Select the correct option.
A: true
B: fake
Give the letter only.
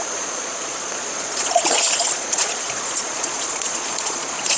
B